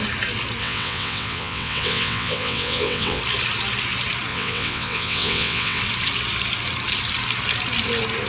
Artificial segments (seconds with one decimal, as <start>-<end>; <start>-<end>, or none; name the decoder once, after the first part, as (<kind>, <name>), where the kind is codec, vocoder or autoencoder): 0.6-3.2 (vocoder, WaveNeXt); 4.3-5.8